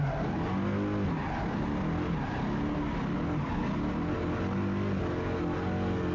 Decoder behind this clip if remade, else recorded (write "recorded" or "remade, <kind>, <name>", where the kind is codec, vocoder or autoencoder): recorded